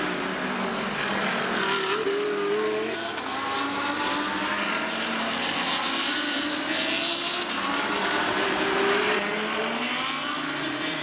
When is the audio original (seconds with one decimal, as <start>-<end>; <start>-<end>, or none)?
0.0-11.0